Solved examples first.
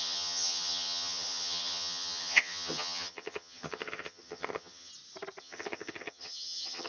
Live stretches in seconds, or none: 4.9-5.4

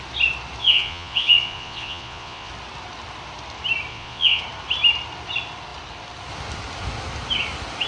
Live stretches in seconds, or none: 0.0-0.6; 2.5-3.9; 4.4-7.9

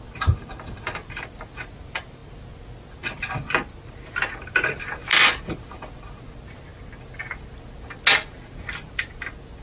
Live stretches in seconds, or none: 0.0-9.6

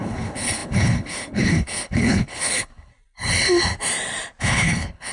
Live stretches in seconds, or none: 2.9-4.4

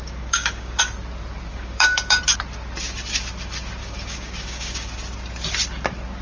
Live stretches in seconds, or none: 0.8-1.5; 2.2-3.8; 4.9-6.2

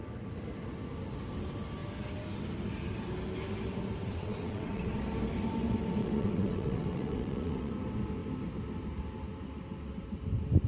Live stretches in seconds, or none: 0.0-4.0; 5.0-6.0; 7.7-10.7

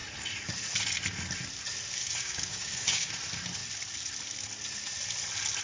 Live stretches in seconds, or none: 0.0-2.0; 3.1-5.6